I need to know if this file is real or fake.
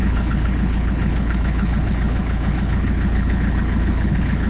fake